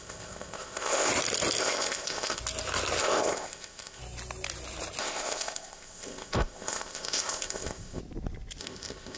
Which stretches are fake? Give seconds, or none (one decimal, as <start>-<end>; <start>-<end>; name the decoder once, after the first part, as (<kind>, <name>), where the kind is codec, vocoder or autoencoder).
0.0-1.1 (codec, ZipCodec); 1.6-2.4; 3.0-4.0; 5.0-8.0; 8.6-9.2